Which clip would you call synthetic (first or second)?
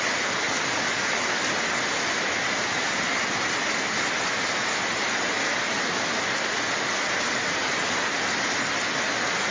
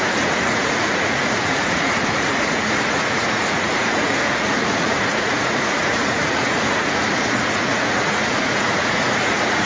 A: second